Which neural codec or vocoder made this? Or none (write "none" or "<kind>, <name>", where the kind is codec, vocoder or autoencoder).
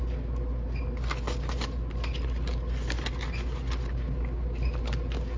none